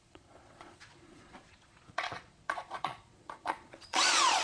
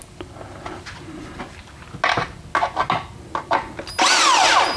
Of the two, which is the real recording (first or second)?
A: second